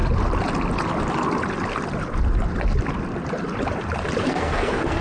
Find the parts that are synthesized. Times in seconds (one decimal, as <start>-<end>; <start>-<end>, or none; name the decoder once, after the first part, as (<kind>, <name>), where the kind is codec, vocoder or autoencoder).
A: 4.2-5.0 (codec, SNAC)